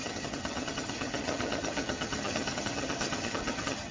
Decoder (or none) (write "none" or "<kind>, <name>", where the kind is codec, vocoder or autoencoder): vocoder, HiFi-GAN